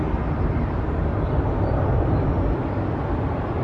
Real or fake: real